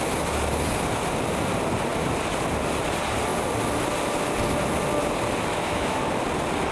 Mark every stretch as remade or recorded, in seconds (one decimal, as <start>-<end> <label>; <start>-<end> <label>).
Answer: 0.0-5.5 recorded; 5.5-6.0 remade; 6.0-6.7 recorded